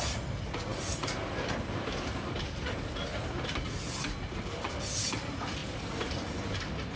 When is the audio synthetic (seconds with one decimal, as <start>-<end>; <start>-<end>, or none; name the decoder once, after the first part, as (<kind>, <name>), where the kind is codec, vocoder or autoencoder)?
none